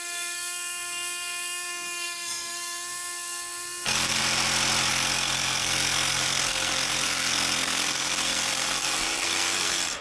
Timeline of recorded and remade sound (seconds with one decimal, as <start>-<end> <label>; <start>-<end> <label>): 0.0-4.2 remade; 4.2-4.9 recorded; 4.9-10.0 remade